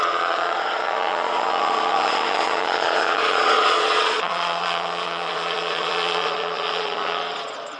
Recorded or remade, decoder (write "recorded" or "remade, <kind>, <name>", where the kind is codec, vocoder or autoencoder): remade, vocoder, Vocos